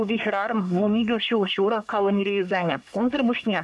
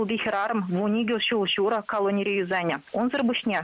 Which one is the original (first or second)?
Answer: second